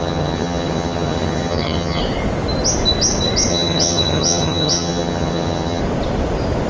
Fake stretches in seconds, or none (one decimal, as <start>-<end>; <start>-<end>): 0.0-2.0; 3.5-5.8